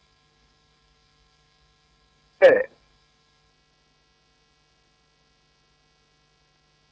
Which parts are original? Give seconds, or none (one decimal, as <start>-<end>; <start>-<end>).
3.5-6.9